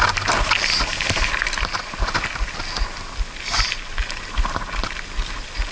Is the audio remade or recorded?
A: recorded